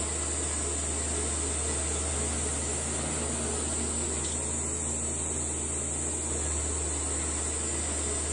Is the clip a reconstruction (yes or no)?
no